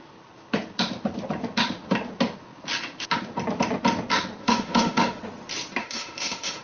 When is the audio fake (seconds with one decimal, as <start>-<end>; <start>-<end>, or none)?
4.4-5.2; 5.8-6.6